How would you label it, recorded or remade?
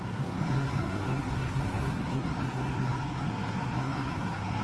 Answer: remade